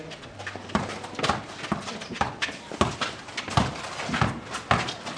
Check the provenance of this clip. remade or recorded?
recorded